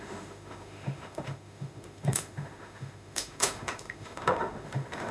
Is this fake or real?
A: fake